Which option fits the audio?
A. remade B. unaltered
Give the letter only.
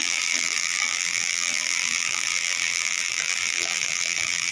A